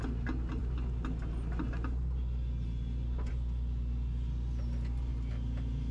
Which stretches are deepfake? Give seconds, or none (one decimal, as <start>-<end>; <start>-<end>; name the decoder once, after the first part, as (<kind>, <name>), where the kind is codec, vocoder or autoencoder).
none